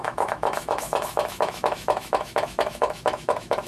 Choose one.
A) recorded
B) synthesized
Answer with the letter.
B